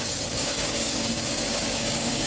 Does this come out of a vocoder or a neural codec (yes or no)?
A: yes